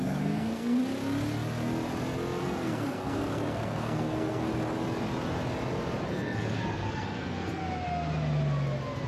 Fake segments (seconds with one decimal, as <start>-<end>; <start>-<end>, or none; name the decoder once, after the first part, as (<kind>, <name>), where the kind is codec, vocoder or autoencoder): 0.0-0.8 (codec, SNAC); 2.4-4.5; 6.1-7.6